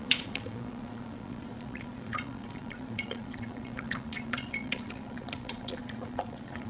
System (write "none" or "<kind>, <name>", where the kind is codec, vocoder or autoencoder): vocoder, Vocos